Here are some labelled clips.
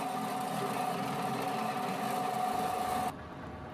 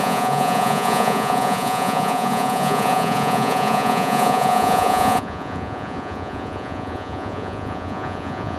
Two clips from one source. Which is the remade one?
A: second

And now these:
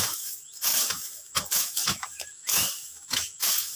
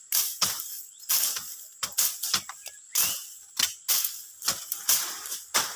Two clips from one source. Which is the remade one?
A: first